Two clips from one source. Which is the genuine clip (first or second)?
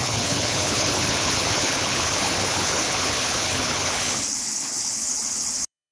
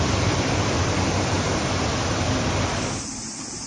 second